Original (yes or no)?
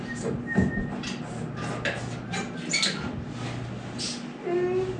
yes